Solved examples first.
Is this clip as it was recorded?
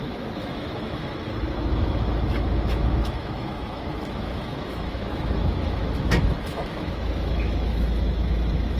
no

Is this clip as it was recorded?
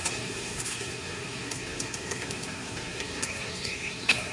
no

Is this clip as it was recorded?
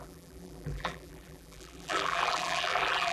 no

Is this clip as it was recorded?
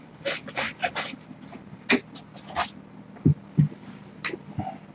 yes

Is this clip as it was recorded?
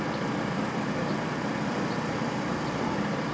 no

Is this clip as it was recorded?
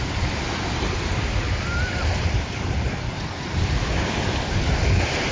no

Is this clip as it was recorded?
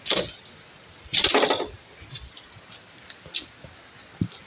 yes